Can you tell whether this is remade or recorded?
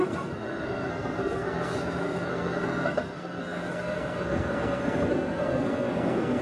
remade